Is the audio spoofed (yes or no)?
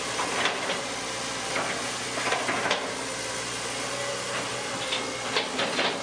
no